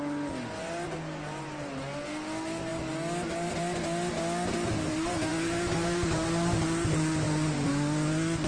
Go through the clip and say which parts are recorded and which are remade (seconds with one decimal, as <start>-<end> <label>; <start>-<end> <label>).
0.0-8.5 recorded